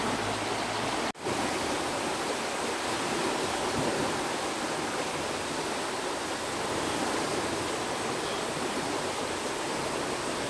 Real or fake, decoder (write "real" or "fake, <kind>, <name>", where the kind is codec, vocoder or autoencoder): real